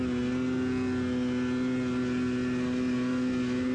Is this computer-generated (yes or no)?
no